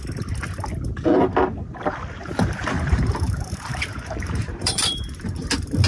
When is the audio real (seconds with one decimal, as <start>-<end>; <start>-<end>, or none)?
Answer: 0.0-2.2; 5.4-5.9